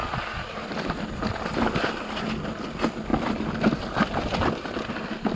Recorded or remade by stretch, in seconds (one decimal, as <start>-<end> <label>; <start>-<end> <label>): 0.0-5.4 recorded